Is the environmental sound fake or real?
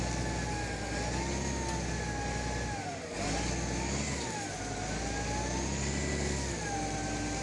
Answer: real